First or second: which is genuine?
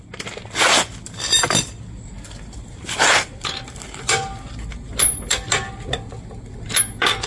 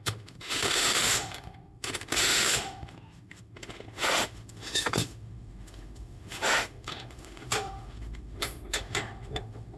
first